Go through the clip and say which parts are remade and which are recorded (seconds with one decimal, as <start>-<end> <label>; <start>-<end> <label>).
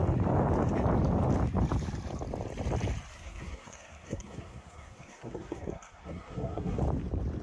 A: 0.0-3.1 recorded; 3.1-6.8 remade; 6.8-7.4 recorded